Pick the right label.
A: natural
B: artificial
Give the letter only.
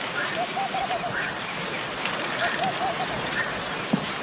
A